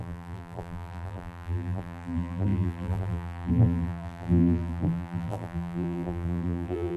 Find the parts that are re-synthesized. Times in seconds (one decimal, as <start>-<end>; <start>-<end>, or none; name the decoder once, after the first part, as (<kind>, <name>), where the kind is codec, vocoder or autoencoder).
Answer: 0.0-7.0 (vocoder, BigVGAN v2)